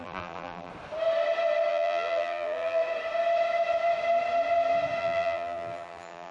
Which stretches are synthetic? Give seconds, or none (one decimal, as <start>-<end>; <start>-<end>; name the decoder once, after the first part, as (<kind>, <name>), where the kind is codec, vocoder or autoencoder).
0.0-0.7 (vocoder, BigVGAN v2); 1.7-2.8; 5.0-6.3